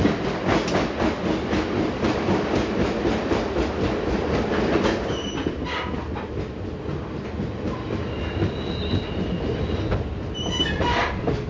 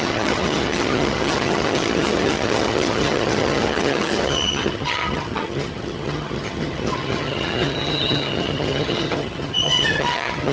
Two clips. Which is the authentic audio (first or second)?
first